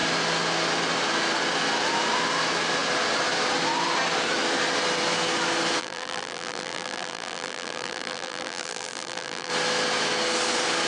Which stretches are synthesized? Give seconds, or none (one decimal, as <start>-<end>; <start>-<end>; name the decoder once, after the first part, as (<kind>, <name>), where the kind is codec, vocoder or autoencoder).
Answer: 5.8-9.5 (vocoder, BigVGAN v2)

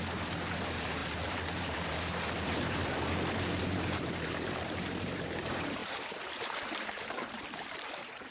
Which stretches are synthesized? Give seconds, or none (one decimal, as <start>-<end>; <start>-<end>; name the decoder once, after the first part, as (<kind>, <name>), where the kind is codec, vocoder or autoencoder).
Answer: 0.0-2.8 (vocoder, BigVGAN v2); 3.6-8.3